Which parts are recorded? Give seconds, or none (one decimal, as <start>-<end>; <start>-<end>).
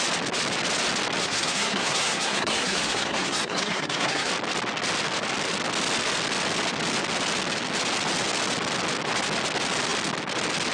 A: 0.0-1.2; 4.3-10.7